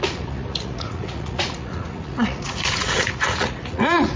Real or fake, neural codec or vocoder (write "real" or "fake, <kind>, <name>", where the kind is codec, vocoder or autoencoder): fake, vocoder, Vocos